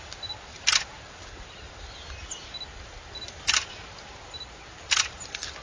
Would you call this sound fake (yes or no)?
no